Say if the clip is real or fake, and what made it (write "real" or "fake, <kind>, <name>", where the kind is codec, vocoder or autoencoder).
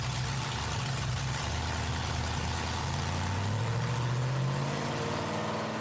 real